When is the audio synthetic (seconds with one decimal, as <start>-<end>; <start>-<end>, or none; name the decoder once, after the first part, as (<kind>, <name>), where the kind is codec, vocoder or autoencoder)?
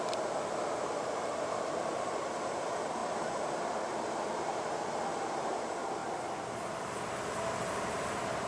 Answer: 0.0-6.0 (vocoder, BigVGAN v2); 7.7-8.5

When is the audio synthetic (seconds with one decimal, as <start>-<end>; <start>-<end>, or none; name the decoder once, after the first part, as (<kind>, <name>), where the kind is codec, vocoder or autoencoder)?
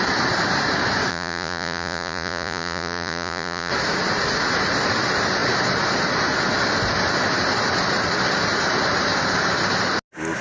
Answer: 1.1-3.7 (vocoder, Vocos)